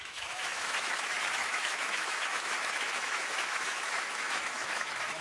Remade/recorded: remade